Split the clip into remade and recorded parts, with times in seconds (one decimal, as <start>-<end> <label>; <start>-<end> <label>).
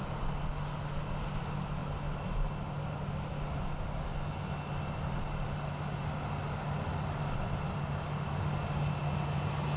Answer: 0.0-9.8 recorded